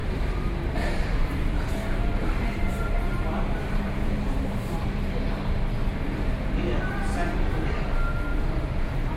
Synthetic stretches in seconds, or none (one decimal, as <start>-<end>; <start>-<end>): 0.0-5.3; 8.3-9.2